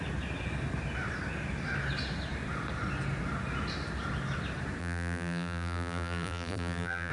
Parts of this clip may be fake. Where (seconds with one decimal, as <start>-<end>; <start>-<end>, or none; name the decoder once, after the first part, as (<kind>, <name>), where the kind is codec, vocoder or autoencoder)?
4.8-7.1 (vocoder, BigVGAN v2)